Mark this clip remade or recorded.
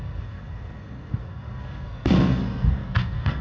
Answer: remade